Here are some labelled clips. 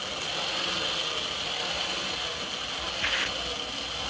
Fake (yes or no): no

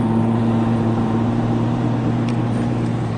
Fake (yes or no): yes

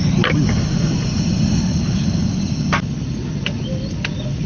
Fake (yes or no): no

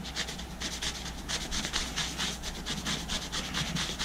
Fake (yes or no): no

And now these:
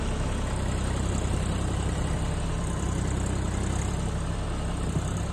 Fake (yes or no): no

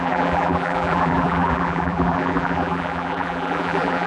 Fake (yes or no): yes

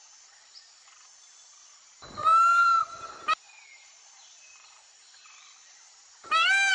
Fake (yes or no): yes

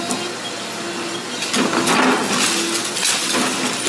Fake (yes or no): no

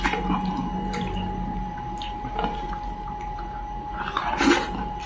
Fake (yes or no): no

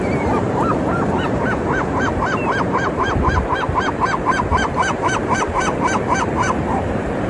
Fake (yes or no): yes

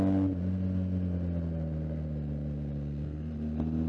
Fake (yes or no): no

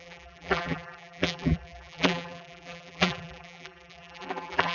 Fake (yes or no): yes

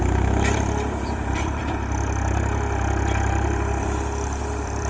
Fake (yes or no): yes